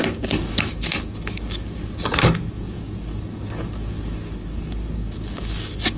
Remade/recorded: remade